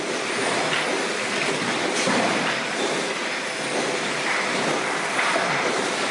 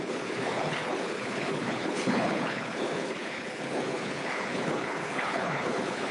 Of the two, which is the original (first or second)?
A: first